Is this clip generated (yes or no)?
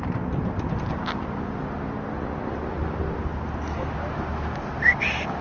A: no